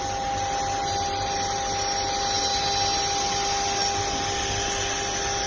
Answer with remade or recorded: recorded